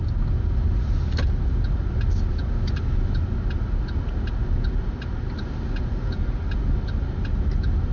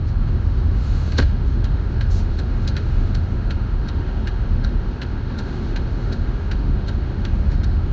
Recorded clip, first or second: first